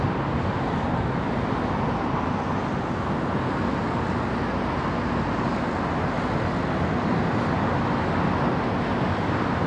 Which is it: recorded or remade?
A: recorded